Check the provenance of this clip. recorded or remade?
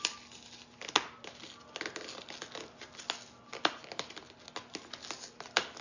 recorded